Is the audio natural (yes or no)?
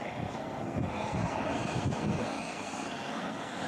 no